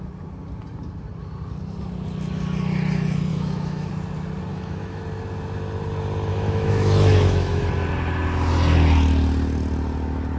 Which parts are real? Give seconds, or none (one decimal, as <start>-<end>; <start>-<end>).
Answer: 0.0-3.3; 3.9-4.5; 5.0-6.3; 7.7-10.4